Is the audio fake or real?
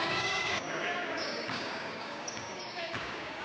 fake